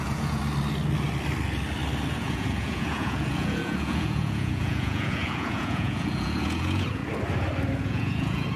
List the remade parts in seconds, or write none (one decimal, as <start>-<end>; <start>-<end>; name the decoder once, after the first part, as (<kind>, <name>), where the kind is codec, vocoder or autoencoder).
0.0-0.4 (vocoder, Vocos); 2.1-7.0; 7.8-8.6